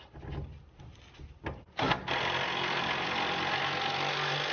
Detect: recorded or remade recorded